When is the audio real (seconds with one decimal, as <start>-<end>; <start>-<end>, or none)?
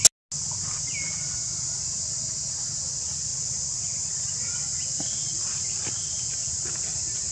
0.0-7.3